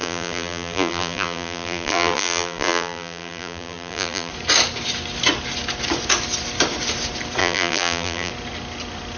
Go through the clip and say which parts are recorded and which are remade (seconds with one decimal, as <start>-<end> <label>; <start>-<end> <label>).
0.0-4.3 remade; 4.3-7.4 recorded; 7.4-8.3 remade; 8.3-9.2 recorded